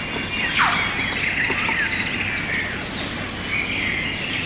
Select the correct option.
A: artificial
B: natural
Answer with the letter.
B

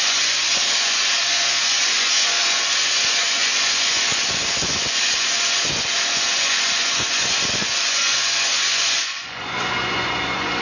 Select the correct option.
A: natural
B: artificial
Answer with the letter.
B